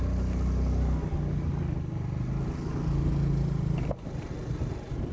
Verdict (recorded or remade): recorded